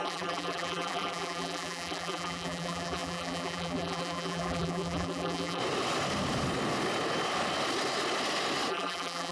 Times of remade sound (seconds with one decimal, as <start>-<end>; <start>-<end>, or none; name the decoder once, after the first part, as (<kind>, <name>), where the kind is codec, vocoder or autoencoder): 0.0-5.6 (vocoder, BigVGAN v2); 8.7-9.3